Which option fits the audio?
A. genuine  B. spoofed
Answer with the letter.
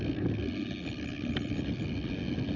A